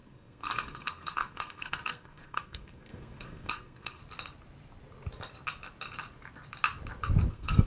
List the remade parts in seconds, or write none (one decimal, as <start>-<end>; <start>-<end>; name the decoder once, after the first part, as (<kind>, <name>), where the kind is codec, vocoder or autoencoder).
0.0-4.0 (codec, SNAC); 7.3-7.7